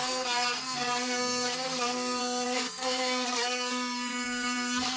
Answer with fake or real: fake